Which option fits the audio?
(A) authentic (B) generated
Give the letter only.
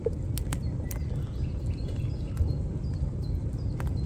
A